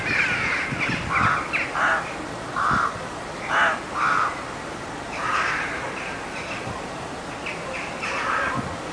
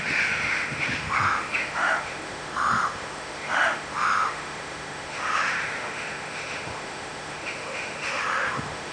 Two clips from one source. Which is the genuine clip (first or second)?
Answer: first